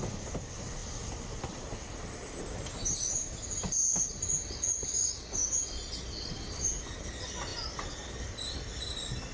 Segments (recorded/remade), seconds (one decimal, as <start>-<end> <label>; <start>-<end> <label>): 0.0-9.3 recorded